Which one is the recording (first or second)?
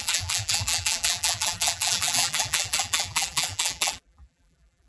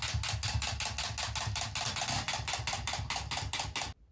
second